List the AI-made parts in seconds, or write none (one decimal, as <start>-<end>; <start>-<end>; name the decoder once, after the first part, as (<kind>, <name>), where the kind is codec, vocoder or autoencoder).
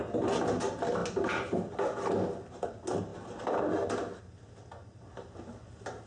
none